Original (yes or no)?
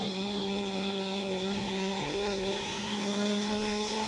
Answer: no